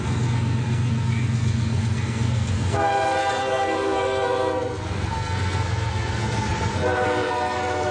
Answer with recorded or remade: remade